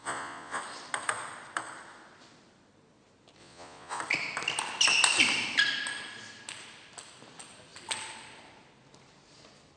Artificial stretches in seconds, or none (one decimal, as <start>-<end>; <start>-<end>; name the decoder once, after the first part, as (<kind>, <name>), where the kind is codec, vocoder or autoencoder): 0.0-0.6 (vocoder, Vocos); 3.4-4.0